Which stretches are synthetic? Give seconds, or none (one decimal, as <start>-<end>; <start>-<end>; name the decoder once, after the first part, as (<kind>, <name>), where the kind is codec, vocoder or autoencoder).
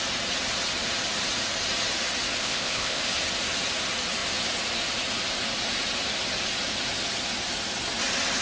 2.4-3.0 (codec, ZipCodec)